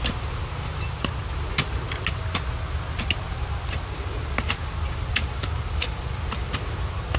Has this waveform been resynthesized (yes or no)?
no